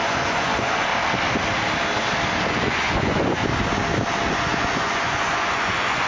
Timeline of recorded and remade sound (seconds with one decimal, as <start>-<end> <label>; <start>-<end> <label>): 0.0-0.9 remade; 0.9-2.5 recorded; 2.5-3.4 remade; 3.4-4.3 recorded; 4.3-6.1 remade